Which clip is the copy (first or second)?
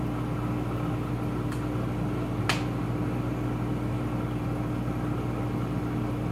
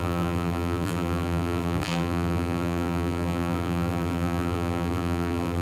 second